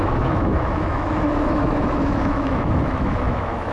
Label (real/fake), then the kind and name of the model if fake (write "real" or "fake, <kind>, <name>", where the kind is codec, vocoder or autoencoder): fake, autoencoder, DAC-VAE